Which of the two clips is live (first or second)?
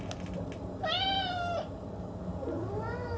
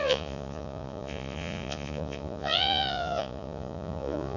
first